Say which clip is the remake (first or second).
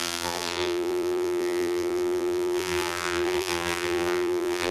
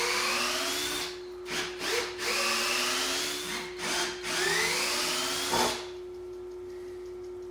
first